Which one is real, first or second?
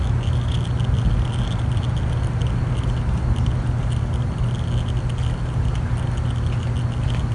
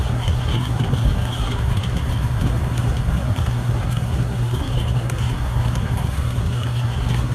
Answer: first